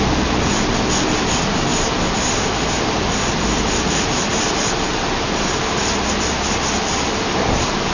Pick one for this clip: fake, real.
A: real